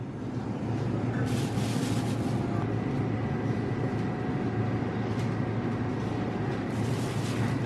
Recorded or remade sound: recorded